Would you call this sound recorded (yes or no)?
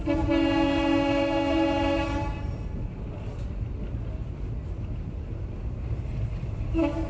yes